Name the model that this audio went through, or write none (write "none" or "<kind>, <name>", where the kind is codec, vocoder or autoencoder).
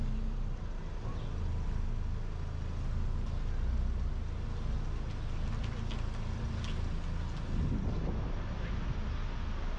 none